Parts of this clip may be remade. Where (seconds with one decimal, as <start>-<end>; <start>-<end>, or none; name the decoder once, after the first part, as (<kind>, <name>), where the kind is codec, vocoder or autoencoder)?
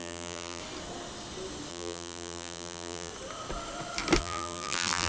0.0-0.6 (vocoder, BigVGAN v2); 1.7-3.1; 4.2-5.1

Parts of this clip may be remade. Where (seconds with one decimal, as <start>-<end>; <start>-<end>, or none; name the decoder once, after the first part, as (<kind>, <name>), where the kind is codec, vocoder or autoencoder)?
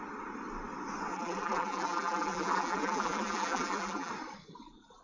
1.1-4.1 (vocoder, BigVGAN v2)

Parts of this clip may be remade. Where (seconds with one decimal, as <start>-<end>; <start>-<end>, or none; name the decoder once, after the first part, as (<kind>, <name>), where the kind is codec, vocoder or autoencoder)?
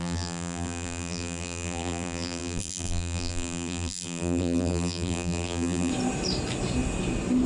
0.0-5.9 (vocoder, BigVGAN v2)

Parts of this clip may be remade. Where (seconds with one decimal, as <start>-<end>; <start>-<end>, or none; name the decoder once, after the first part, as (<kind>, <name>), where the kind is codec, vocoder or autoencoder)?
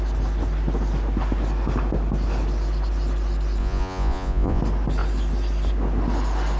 3.6-4.6 (vocoder, Vocos)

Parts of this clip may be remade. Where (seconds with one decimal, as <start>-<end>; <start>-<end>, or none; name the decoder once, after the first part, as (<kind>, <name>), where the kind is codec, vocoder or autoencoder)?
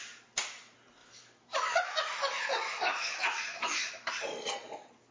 1.0-4.1 (autoencoder, DAC-VAE)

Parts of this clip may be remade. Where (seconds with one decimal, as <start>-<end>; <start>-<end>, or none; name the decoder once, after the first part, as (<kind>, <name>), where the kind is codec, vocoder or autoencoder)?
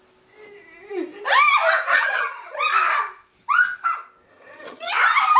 1.9-2.6 (vocoder, HiFi-GAN); 4.3-4.9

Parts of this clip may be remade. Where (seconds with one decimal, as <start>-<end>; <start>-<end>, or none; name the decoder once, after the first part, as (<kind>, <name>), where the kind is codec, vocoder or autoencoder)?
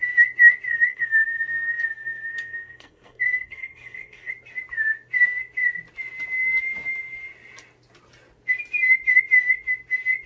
0.7-4.3 (codec, SNAC)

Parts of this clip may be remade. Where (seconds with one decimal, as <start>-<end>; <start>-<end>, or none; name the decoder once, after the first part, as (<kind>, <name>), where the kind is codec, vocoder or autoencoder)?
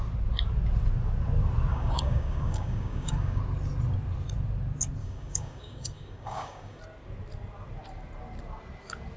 1.7-3.4 (codec, DAC); 5.0-6.8